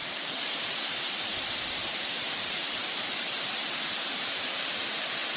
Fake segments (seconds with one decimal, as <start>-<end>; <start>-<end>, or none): 0.0-0.6; 1.8-5.0